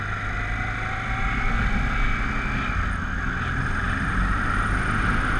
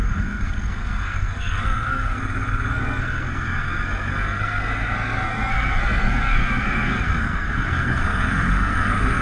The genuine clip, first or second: first